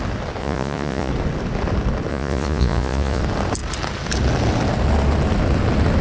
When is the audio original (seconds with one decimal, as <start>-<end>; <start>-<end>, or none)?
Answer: 0.0-0.4; 1.1-2.1; 3.2-6.0